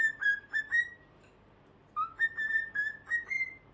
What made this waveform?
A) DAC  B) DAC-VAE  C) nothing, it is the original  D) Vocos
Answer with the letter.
C